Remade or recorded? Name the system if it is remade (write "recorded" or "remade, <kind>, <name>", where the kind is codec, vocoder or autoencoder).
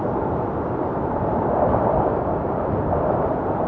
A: remade, vocoder, BigVGAN v2